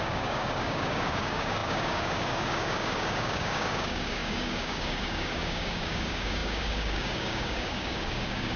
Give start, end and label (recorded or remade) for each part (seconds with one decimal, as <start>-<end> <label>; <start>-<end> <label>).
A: 0.0-8.6 remade

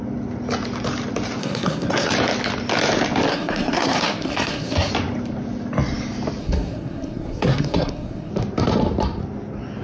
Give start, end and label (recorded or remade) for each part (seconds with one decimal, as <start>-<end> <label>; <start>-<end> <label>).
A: 0.0-1.4 recorded; 1.4-2.1 remade; 2.1-3.3 recorded; 3.3-4.9 remade; 4.9-6.4 recorded; 6.4-8.3 remade; 8.3-9.8 recorded